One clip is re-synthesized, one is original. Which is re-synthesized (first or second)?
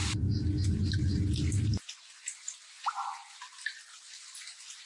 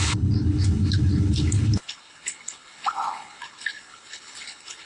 second